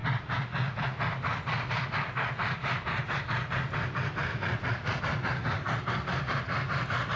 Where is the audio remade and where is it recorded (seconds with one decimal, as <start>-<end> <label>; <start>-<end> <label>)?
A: 0.0-0.9 remade; 0.9-4.3 recorded; 4.3-5.0 remade; 5.0-7.2 recorded